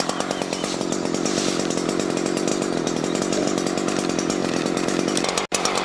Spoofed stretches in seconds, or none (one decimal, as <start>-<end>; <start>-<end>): none